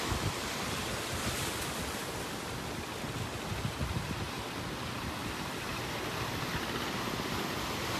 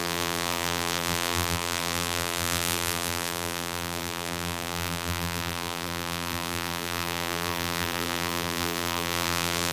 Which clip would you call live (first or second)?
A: first